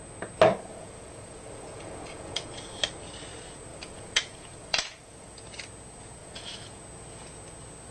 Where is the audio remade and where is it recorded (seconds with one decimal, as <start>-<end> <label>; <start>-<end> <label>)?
0.0-0.7 recorded; 0.7-2.5 remade; 2.5-3.7 recorded; 3.7-5.3 remade; 5.3-6.2 recorded; 6.2-6.8 remade; 6.8-7.9 recorded